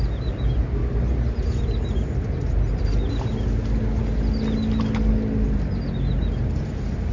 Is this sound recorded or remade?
recorded